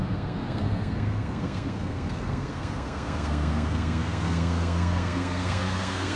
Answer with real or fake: fake